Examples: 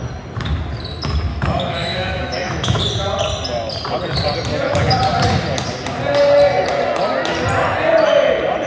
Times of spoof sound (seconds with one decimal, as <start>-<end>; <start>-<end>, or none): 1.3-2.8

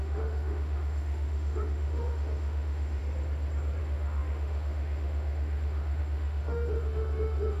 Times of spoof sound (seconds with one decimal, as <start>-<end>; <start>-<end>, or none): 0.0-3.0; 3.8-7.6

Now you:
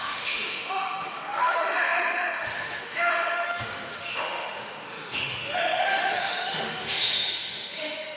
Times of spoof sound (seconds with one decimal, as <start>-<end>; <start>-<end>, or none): 0.0-8.2

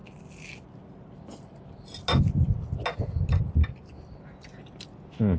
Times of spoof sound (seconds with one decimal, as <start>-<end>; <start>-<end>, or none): none

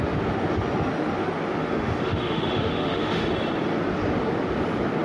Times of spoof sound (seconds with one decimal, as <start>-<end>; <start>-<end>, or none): 1.6-3.2

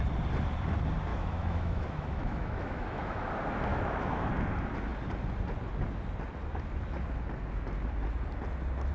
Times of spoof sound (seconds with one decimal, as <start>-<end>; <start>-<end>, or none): 1.1-3.3; 3.7-4.3